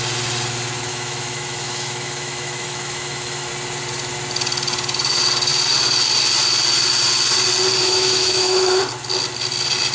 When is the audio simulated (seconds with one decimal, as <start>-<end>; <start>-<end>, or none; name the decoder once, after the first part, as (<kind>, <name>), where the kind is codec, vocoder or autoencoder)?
0.9-3.5 (autoencoder, DAC-VAE); 7.8-8.8